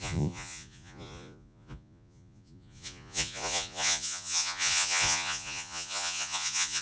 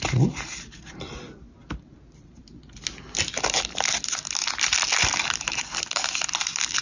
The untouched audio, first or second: second